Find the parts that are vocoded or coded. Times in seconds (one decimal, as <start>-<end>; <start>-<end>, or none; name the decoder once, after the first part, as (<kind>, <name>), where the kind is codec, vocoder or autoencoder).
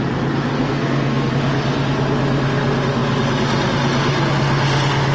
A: 0.5-1.3 (codec, SNAC)